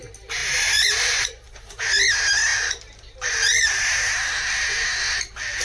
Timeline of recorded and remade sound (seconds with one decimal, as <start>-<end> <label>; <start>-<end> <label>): 0.0-0.4 recorded; 0.4-1.9 remade; 1.9-2.5 recorded; 2.5-3.8 remade; 3.8-5.6 recorded